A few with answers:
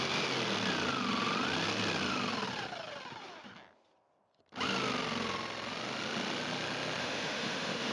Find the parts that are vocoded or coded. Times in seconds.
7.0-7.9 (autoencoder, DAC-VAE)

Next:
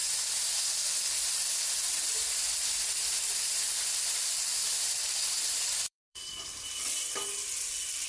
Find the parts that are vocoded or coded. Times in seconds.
0.0-4.9 (vocoder, BigVGAN v2); 5.7-6.3

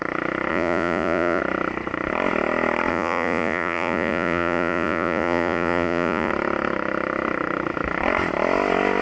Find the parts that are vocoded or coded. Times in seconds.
0.5-1.4 (vocoder, Vocos); 2.9-6.3

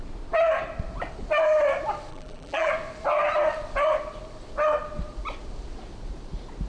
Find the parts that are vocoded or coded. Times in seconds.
2.1-2.7 (vocoder, BigVGAN v2)